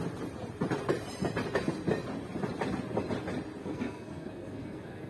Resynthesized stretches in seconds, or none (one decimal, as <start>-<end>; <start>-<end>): 3.6-5.1